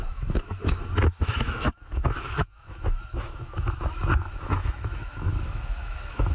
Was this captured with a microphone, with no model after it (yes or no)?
no